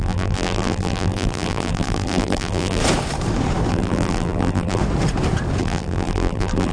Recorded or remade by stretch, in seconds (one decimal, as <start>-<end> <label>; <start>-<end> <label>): 0.0-2.8 remade; 2.8-3.7 recorded; 3.7-4.8 remade; 4.8-5.6 recorded; 5.6-6.7 remade